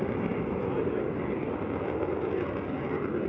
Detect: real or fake real